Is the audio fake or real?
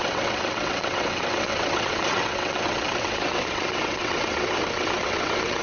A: fake